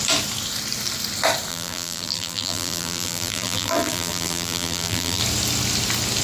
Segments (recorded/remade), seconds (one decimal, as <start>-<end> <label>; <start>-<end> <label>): 0.0-1.5 recorded; 1.5-5.2 remade; 5.2-6.2 recorded